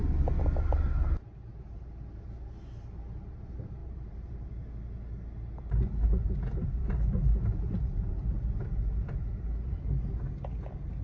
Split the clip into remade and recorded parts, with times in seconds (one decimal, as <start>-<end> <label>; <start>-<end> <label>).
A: 0.0-3.8 recorded; 3.8-4.5 remade; 4.5-7.3 recorded; 7.3-8.4 remade; 8.4-11.0 recorded